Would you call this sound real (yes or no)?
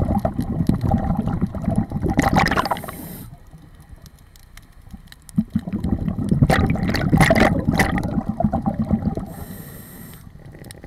yes